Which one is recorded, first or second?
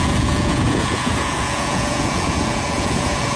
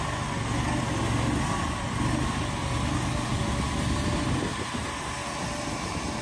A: second